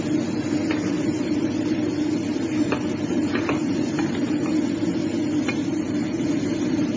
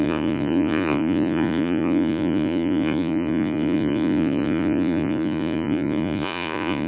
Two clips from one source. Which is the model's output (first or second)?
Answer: second